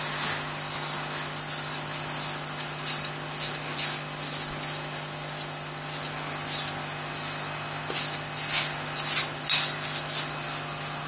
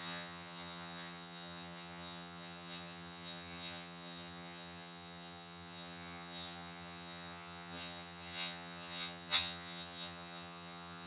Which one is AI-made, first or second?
second